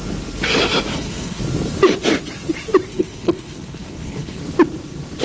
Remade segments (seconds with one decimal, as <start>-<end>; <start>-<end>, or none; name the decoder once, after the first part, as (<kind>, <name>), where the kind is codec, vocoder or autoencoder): 0.9-1.4 (codec, HILCodec); 2.9-4.4